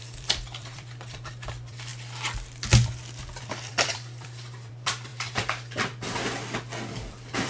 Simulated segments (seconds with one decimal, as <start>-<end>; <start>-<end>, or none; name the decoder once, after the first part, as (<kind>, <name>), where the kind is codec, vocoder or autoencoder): 0.0-1.9 (vocoder, BigVGAN v2); 3.4-5.1; 6.9-7.5